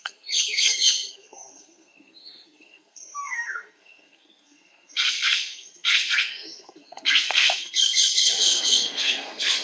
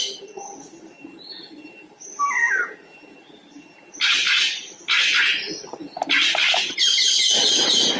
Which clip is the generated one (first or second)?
first